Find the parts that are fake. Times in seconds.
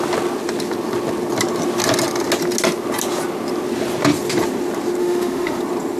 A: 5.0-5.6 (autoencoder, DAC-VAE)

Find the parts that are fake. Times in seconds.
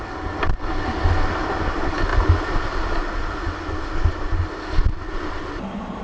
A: none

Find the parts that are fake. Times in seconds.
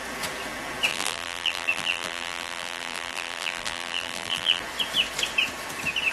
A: 0.9-4.6 (vocoder, BigVGAN v2)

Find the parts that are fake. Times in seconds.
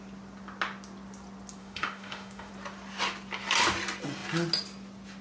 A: 1.6-2.5 (autoencoder, DAC-VAE)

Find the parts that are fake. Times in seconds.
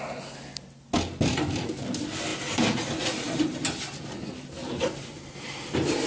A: 1.3-1.9 (vocoder, BigVGAN v2); 4.6-6.1